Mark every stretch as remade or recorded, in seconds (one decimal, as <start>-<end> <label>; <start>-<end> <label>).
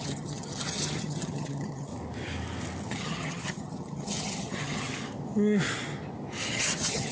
0.0-1.9 remade; 1.9-2.9 recorded; 2.9-4.9 remade; 4.9-6.5 recorded; 6.5-7.1 remade